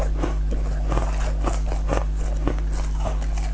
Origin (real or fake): real